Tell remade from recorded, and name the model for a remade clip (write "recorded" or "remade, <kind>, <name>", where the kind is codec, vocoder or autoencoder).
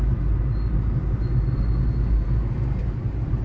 recorded